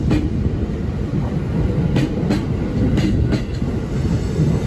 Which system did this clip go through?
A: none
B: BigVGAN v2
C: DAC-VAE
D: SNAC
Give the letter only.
A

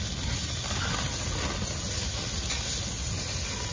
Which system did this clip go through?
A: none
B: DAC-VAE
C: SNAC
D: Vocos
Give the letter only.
A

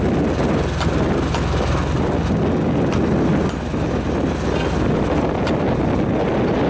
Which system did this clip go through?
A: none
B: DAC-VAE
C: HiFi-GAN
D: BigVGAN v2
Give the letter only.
A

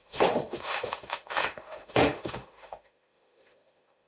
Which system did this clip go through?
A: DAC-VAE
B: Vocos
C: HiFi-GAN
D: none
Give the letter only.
A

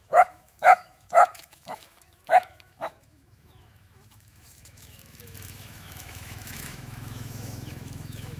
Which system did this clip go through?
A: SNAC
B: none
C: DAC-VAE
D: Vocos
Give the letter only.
C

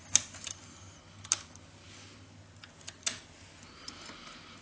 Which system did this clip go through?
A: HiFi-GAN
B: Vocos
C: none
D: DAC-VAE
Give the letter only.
C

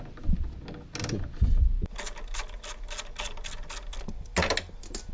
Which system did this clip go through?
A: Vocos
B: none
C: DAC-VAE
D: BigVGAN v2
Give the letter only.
B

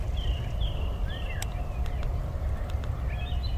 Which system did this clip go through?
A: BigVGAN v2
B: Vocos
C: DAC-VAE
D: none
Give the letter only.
D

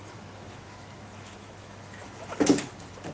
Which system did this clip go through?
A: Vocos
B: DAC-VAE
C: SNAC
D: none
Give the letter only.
B